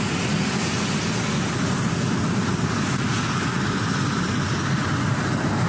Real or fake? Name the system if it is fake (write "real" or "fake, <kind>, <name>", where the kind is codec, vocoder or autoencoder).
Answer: real